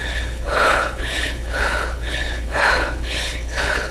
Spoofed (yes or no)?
yes